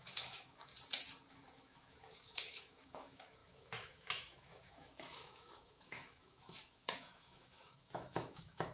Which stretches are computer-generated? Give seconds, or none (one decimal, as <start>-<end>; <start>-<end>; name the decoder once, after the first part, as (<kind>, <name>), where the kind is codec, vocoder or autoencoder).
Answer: 0.0-0.7 (autoencoder, DAC-VAE); 1.3-8.7